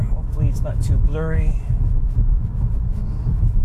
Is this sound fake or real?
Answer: fake